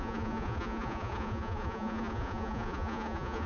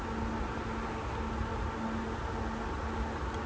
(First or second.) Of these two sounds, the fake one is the first